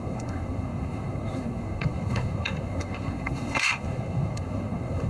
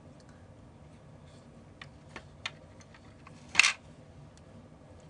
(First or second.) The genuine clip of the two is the second